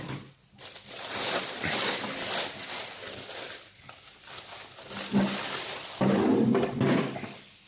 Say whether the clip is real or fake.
real